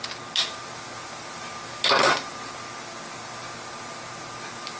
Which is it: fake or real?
real